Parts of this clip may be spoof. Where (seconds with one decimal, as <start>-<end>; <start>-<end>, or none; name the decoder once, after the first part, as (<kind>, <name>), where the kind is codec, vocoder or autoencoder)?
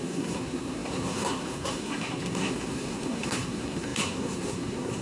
0.0-5.0 (codec, SNAC)